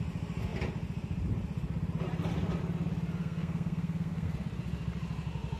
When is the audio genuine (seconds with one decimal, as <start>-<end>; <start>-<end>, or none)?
0.0-3.2; 4.3-5.6